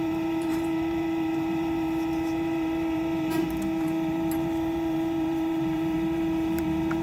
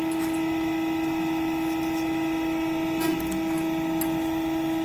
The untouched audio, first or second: second